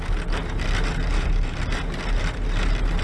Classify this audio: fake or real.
real